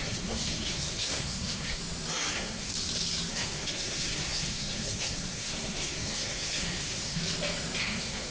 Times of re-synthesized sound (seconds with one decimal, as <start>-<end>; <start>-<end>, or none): 0.0-1.8; 2.3-2.7; 3.3-7.2; 7.8-8.3